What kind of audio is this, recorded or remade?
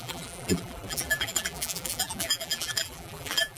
remade